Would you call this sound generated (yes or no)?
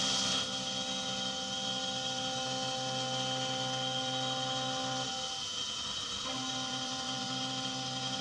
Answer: no